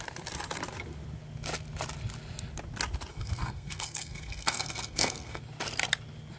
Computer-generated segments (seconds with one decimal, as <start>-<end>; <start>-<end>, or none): 3.1-5.4